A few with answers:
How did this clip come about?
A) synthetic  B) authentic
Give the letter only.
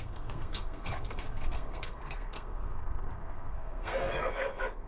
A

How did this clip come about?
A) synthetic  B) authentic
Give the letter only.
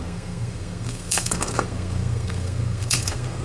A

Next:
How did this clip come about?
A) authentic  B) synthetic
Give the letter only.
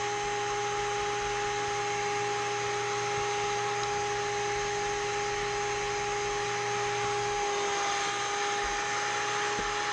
A